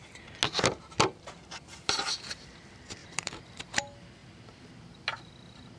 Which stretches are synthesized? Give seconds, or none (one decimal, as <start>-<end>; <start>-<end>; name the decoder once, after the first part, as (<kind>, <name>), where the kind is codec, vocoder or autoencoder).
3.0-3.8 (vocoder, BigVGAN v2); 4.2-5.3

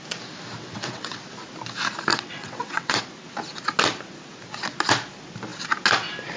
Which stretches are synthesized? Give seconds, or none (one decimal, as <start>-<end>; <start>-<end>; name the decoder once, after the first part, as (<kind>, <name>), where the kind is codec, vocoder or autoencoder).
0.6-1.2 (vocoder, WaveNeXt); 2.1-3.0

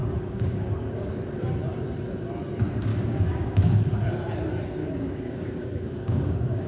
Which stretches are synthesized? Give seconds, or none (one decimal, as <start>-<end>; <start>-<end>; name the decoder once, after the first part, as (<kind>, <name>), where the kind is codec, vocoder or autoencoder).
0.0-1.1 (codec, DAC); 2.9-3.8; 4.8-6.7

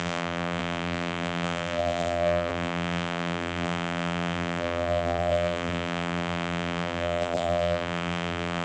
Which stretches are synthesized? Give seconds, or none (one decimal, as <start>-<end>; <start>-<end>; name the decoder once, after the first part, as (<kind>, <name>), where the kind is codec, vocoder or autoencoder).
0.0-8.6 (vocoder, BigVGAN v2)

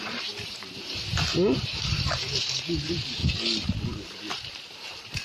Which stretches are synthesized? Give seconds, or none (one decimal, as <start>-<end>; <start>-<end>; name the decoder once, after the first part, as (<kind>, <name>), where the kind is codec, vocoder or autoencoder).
0.0-3.2 (vocoder, BigVGAN v2); 4.3-5.2

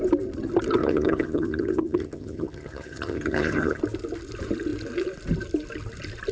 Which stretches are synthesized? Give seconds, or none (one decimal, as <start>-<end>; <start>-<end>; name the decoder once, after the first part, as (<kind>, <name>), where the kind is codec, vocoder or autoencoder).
0.8-3.8 (vocoder, HiFi-GAN)